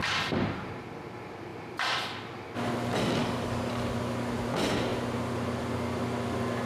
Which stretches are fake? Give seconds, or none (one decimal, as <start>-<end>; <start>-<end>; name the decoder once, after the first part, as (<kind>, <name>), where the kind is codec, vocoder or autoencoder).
3.2-3.7 (codec, DAC)